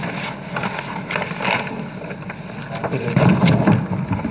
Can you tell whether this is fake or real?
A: real